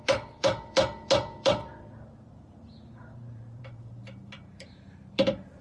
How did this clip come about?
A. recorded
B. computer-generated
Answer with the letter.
B